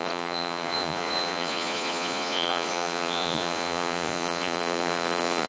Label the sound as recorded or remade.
remade